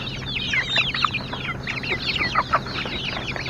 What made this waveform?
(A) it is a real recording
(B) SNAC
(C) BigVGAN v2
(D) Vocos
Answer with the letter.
A